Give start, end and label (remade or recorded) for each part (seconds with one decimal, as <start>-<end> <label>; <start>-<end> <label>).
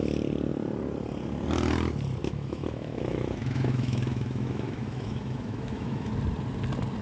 0.0-2.2 recorded; 2.2-6.1 remade; 6.1-7.0 recorded